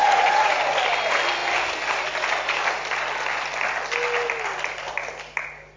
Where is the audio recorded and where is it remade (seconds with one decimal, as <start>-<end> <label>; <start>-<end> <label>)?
0.0-0.6 remade; 0.6-5.8 recorded